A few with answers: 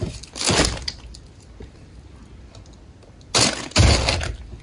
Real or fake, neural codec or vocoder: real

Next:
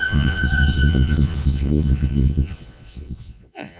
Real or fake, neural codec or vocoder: fake, vocoder, Vocos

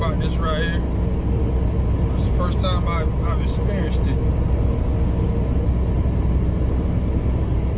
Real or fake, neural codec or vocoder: real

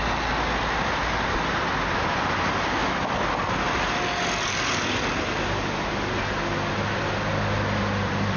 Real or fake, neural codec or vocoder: real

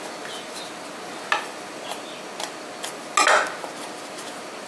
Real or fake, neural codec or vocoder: real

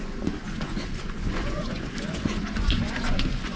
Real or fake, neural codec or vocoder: fake, vocoder, Vocos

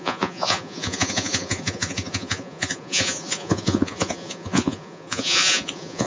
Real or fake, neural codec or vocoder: fake, vocoder, Vocos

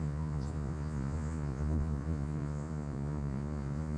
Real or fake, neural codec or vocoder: fake, vocoder, Vocos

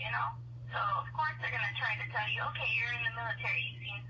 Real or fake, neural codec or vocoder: real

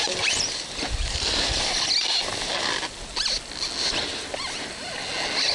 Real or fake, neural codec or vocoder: real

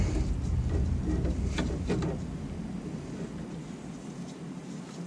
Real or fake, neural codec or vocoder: real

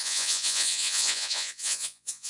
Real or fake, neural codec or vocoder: fake, vocoder, Vocos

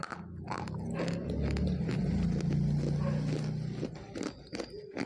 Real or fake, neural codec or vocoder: real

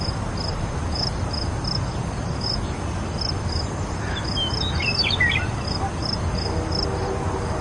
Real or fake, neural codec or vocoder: real